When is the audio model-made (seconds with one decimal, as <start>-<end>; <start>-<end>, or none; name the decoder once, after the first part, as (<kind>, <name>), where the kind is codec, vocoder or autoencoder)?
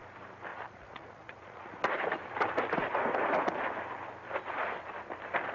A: 0.5-1.8 (vocoder, Vocos)